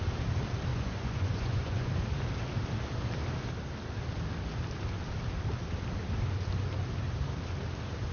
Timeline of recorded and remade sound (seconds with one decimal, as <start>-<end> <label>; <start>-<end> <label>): 0.0-0.7 recorded; 0.7-1.9 remade; 1.9-8.1 recorded